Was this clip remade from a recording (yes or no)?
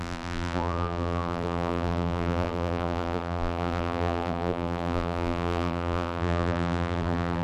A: yes